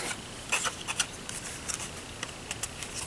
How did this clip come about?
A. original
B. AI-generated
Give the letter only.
A